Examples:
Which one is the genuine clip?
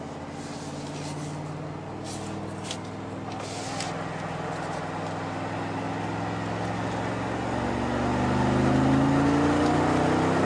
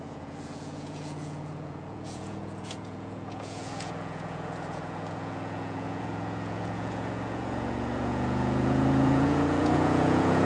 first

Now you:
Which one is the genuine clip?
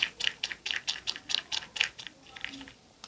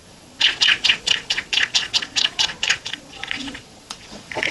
first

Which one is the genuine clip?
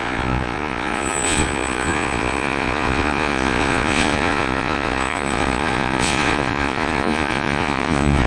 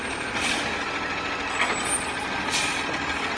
second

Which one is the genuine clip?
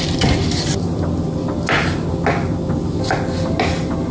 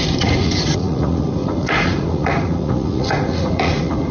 first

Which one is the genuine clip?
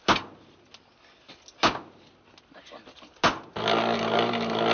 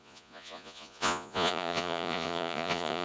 first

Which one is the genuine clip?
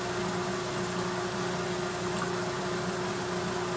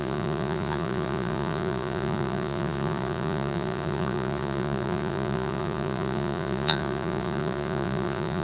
first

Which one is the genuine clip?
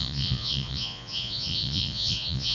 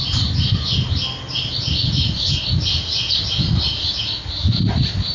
second